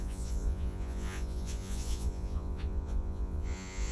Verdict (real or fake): fake